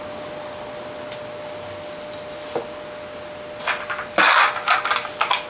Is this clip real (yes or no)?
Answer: yes